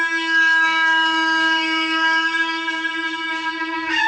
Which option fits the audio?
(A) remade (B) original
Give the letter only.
A